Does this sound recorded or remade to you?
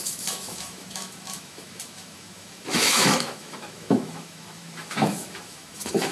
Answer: remade